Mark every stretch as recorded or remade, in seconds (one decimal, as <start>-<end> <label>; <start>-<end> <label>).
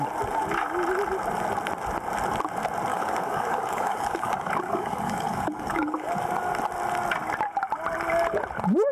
0.0-2.9 recorded; 2.9-6.1 remade; 6.1-8.9 recorded